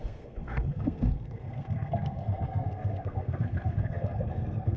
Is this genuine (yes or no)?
no